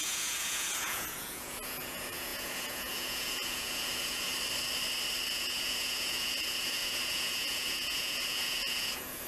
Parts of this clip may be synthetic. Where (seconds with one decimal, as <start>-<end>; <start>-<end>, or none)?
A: 0.0-4.3; 5.3-9.3